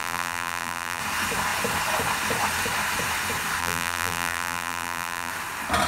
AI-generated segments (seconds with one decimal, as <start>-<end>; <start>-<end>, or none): 0.0-1.0; 3.6-5.3

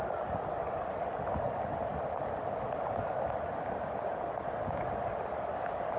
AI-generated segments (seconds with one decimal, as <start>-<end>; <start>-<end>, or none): none

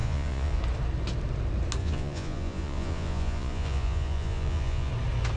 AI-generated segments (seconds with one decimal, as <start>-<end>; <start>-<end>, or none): 0.0-0.6; 1.8-4.9

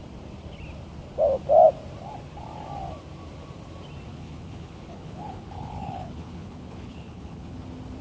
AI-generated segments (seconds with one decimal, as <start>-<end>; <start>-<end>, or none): 4.1-7.6

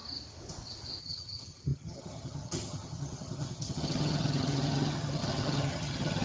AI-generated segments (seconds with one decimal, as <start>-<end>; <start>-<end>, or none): 1.0-6.2

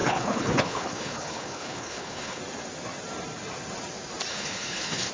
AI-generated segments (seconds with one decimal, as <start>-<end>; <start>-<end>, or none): 0.0-2.4; 4.3-5.1